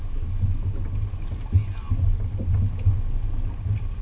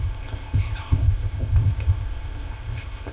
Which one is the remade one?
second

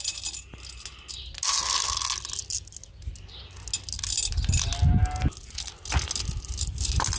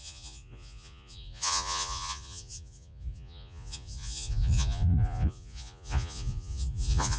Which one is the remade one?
second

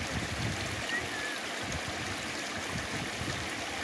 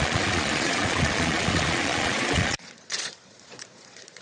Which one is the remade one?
second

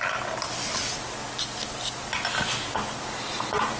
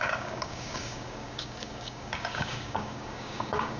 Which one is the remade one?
second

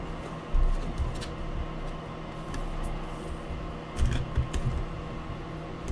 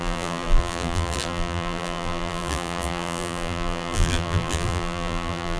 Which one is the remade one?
second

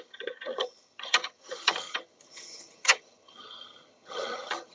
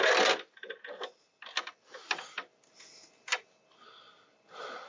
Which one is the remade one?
first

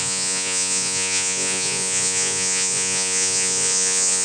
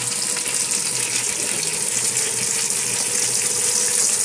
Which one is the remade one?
first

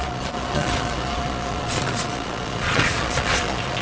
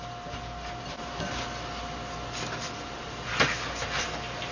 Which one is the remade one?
first